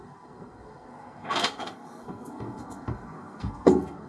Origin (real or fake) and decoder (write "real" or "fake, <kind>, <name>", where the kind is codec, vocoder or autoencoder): fake, codec, SNAC